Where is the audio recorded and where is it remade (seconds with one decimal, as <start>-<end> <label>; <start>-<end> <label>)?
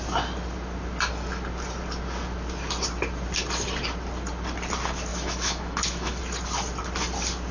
0.0-5.1 recorded; 5.1-6.2 remade; 6.2-7.5 recorded